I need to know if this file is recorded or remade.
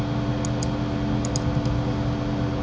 recorded